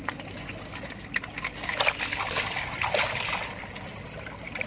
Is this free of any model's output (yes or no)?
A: yes